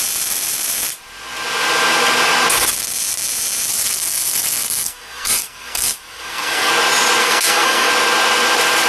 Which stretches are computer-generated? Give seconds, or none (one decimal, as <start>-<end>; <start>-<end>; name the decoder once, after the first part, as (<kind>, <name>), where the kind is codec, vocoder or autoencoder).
3.7-6.7 (codec, SNAC); 7.2-7.9